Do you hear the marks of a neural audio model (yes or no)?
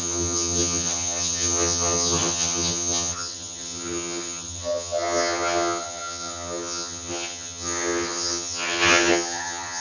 yes